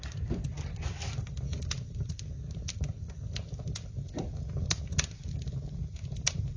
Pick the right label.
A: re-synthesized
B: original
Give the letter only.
B